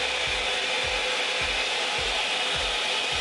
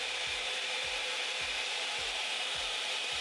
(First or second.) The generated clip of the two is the second